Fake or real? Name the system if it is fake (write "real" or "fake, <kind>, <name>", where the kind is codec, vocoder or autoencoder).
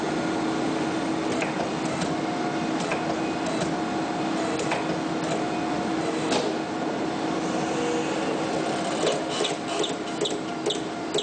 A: real